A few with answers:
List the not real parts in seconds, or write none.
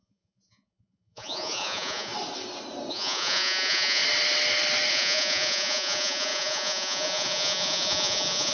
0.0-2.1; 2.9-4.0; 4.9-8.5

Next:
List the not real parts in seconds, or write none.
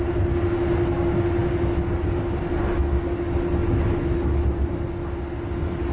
none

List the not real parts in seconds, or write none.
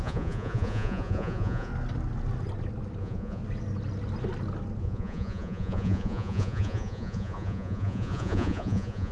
0.0-1.7; 3.0-3.4; 4.8-9.1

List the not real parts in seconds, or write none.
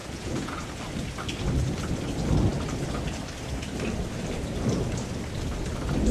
0.0-0.7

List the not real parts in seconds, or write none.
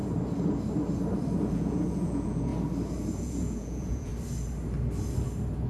1.5-2.5; 3.2-4.1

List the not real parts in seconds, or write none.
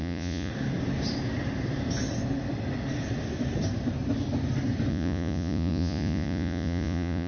0.0-0.5; 4.9-7.3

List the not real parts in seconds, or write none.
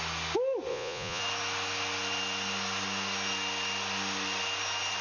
0.7-1.2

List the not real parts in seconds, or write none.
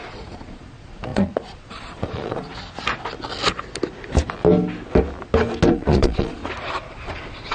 0.0-2.5; 5.7-6.4; 6.9-7.5